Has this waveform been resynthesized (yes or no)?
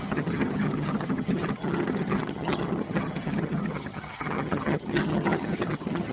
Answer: yes